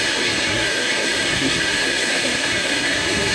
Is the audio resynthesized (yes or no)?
yes